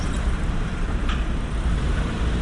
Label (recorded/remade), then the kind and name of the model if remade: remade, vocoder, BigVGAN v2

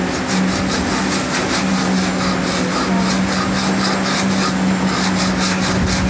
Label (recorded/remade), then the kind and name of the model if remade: recorded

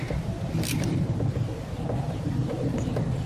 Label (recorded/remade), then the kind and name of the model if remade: remade, vocoder, BigVGAN v2